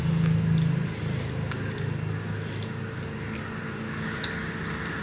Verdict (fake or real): real